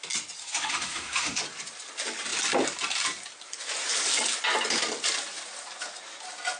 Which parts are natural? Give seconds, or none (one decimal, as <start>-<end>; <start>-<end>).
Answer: 0.0-0.4; 1.4-6.6